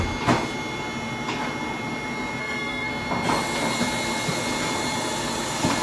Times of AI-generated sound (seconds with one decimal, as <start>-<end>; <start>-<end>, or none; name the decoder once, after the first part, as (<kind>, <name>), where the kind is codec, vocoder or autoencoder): 2.4-2.9 (codec, SNAC)